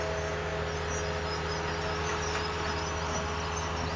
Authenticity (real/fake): real